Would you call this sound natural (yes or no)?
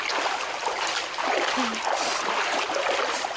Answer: yes